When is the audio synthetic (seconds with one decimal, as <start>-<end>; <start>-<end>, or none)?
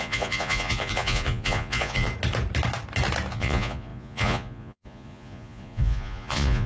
0.0-2.1; 3.3-6.7